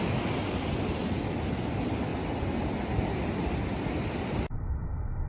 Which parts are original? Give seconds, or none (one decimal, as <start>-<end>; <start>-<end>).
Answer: 0.0-5.3